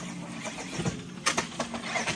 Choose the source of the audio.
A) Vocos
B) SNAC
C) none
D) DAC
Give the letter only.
C